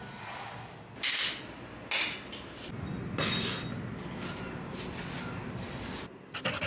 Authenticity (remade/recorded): recorded